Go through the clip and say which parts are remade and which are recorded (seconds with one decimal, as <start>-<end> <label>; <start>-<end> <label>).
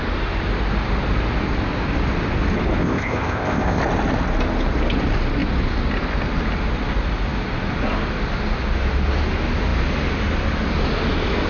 0.0-2.8 recorded; 2.8-3.8 remade; 3.8-11.5 recorded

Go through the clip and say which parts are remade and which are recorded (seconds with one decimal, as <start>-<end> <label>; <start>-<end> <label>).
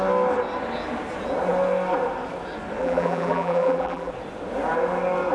0.0-2.8 recorded; 2.8-4.1 remade; 4.1-5.3 recorded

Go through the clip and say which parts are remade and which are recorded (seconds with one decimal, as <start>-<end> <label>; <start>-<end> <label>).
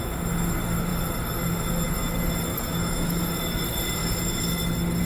0.0-2.5 recorded; 2.5-3.2 remade; 3.2-5.0 recorded